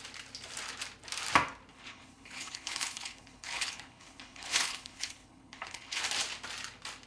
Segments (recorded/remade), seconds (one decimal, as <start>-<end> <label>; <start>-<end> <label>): 0.0-1.7 recorded; 1.7-6.0 remade; 6.0-7.1 recorded